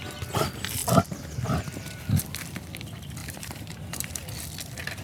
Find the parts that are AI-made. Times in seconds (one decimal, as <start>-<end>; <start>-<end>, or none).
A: 3.2-4.1